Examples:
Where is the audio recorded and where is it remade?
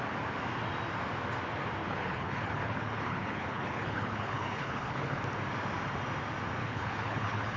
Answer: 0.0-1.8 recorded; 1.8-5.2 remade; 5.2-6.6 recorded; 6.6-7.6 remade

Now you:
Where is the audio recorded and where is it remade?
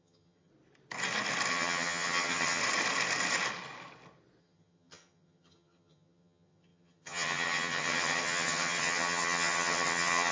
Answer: 0.0-0.5 remade; 0.5-1.5 recorded; 1.5-2.6 remade; 2.6-4.4 recorded; 4.4-10.3 remade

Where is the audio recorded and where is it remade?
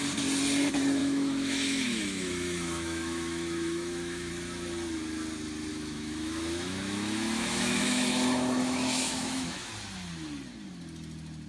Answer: 0.0-1.0 recorded; 1.0-4.3 remade; 4.3-5.7 recorded; 5.7-9.7 remade; 9.7-11.5 recorded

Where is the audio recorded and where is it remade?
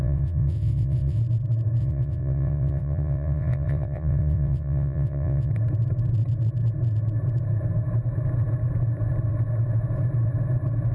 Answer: 0.0-1.2 remade; 1.2-1.8 recorded; 1.8-5.5 remade; 5.5-10.9 recorded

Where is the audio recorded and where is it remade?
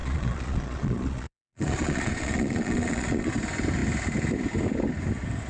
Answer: 0.0-3.3 remade; 3.3-5.5 recorded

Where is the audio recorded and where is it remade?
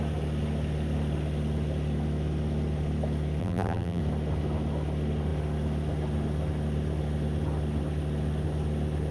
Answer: 0.0-3.4 recorded; 3.4-4.0 remade; 4.0-9.1 recorded